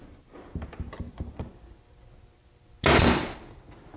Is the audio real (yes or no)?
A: yes